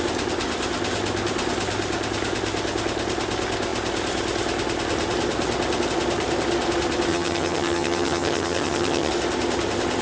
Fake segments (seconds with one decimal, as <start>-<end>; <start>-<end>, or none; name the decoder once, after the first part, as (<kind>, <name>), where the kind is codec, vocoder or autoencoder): 7.1-9.1 (vocoder, HiFi-GAN)